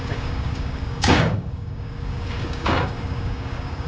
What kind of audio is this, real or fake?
fake